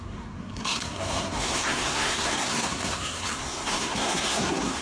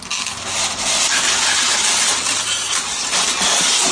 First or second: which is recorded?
second